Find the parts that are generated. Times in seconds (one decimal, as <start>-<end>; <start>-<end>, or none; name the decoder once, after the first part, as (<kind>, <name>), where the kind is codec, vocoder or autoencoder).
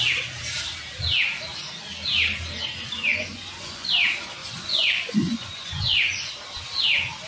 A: 3.1-3.9 (vocoder, Vocos); 4.4-6.3